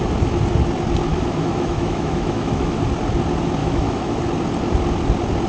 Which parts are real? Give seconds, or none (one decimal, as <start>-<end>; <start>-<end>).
0.0-1.1; 2.8-3.6; 4.2-5.5